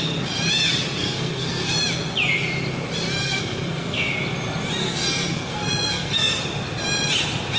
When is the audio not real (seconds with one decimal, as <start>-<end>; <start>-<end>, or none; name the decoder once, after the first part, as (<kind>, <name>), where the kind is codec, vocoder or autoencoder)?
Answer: 1.0-1.8 (codec, SNAC); 3.2-4.1; 4.8-6.4

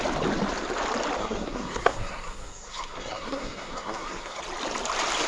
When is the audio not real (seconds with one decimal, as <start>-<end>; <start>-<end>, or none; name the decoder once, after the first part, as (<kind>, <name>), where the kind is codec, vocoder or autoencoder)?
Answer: 1.2-4.4 (codec, SNAC)

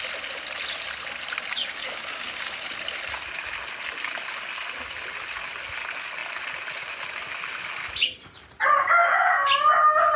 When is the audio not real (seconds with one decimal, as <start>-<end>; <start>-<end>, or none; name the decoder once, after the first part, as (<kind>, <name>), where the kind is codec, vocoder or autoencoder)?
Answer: 1.6-2.6 (codec, DAC); 9.0-9.5